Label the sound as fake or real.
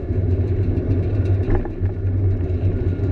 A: real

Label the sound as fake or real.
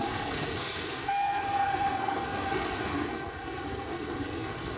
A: fake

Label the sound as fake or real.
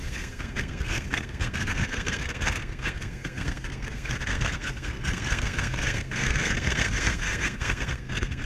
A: fake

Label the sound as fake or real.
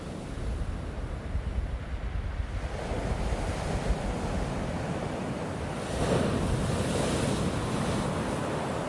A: real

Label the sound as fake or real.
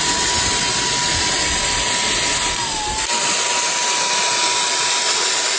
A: real